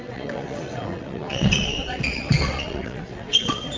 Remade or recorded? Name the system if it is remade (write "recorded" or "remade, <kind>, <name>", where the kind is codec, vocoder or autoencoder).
remade, vocoder, WaveNeXt